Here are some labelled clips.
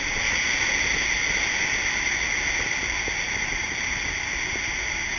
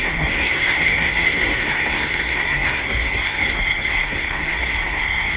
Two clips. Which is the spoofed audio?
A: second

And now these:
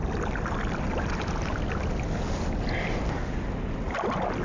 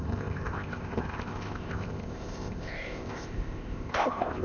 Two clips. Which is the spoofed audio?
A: second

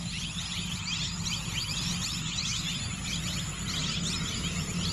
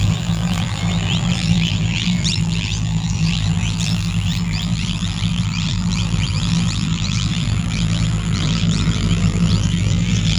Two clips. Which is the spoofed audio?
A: second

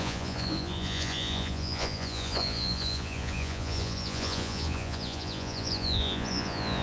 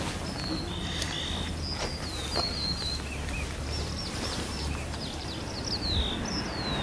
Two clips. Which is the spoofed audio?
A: first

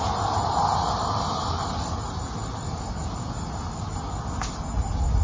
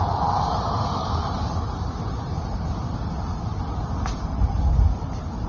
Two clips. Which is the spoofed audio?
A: second